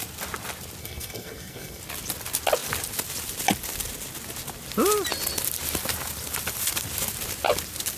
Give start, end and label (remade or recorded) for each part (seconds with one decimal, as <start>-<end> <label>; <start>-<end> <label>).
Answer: 0.0-0.8 recorded; 0.8-1.8 remade; 1.8-8.0 recorded